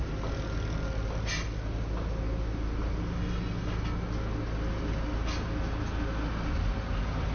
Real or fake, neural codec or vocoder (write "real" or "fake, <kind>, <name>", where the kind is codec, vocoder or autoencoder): real